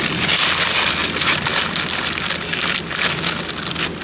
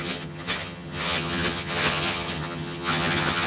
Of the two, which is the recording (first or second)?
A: first